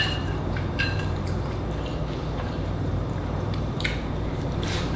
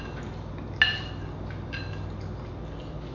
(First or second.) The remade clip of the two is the first